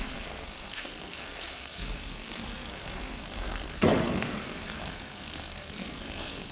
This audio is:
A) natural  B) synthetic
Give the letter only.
B